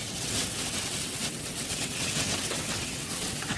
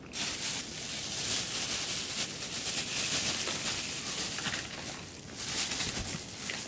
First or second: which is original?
second